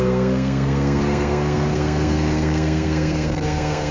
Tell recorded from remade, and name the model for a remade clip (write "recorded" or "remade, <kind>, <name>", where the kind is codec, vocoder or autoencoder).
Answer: remade, codec, SNAC